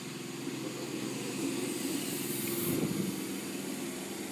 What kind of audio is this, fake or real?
real